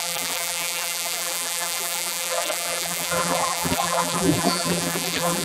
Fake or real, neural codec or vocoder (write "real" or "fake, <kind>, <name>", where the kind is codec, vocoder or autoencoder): fake, vocoder, BigVGAN v2